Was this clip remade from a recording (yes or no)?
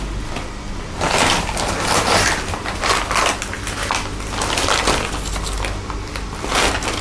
no